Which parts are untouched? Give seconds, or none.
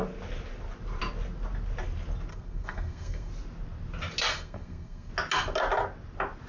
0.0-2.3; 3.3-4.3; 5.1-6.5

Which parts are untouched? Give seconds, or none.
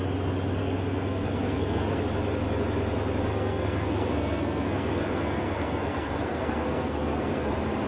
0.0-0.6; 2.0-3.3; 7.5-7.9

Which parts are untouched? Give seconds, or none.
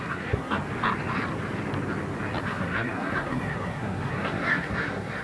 0.6-2.4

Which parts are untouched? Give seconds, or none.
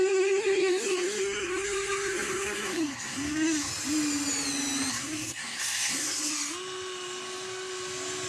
3.7-4.9; 6.3-8.3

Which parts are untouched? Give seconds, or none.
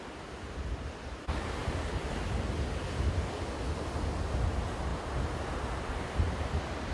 0.0-6.9